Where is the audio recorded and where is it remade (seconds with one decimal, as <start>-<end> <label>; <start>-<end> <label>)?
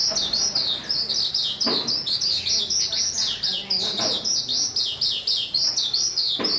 0.0-6.6 recorded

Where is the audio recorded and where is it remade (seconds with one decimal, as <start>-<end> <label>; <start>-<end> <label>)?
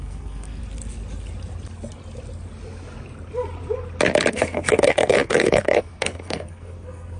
0.0-0.6 remade; 0.6-4.3 recorded; 4.3-7.2 remade